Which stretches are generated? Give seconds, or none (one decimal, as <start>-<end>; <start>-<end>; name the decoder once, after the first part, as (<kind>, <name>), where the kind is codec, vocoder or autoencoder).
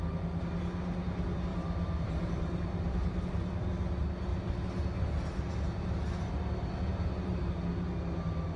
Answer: 1.5-3.7 (vocoder, BigVGAN v2); 6.9-7.6